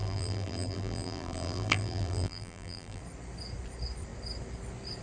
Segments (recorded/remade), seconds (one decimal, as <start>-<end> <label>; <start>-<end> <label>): 0.0-3.0 remade; 3.0-5.0 recorded